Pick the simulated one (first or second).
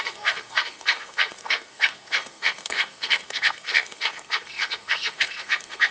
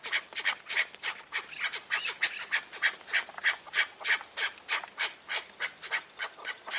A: first